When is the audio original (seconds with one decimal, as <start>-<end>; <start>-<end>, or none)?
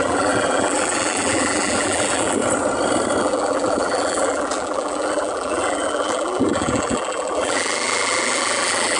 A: 2.4-3.2